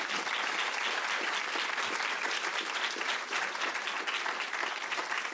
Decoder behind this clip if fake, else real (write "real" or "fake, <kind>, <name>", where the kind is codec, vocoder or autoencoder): fake, vocoder, BigVGAN v2